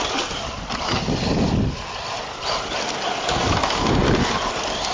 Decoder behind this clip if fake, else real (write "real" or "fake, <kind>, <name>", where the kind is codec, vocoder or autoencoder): real